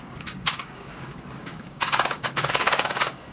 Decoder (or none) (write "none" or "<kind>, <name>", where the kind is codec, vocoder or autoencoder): codec, DAC